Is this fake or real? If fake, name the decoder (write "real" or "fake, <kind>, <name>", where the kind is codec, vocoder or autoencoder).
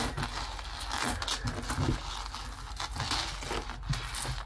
real